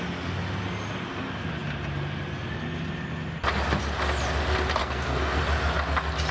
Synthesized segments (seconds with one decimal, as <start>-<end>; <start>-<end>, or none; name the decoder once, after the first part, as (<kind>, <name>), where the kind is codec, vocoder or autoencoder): 4.8-5.4 (codec, SNAC)

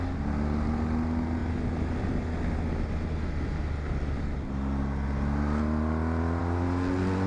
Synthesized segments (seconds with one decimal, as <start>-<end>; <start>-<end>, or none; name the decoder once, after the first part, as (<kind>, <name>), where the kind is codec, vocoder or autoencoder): none

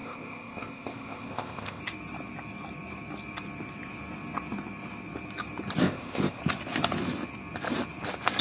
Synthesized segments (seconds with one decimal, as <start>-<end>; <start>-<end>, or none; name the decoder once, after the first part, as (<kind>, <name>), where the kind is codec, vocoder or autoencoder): 0.0-1.8 (codec, ZipCodec); 5.8-6.4

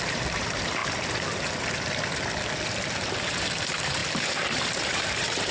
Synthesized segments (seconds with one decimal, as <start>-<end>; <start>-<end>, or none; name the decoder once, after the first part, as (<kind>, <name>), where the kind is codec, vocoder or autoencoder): 0.0-0.8 (vocoder, BigVGAN v2); 3.4-5.5